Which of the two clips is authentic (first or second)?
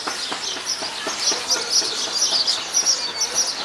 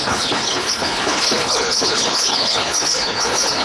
first